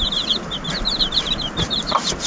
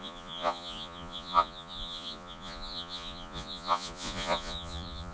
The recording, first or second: first